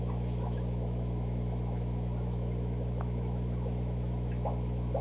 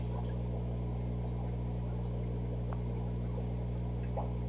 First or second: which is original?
second